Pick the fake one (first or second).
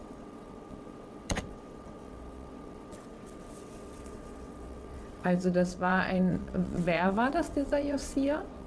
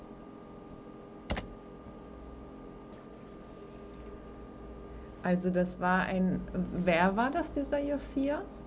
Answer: first